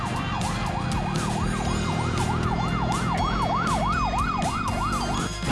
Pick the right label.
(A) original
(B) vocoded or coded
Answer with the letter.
A